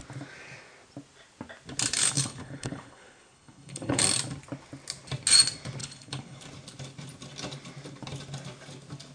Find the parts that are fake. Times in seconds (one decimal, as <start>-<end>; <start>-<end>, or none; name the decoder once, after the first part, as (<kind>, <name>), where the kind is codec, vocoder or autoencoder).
2.0-4.0 (codec, HILCodec); 5.8-6.4